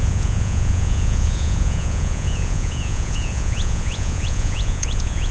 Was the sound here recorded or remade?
remade